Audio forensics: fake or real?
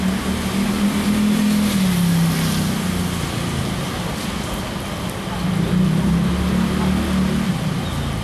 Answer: real